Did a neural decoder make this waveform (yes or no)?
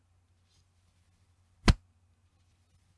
no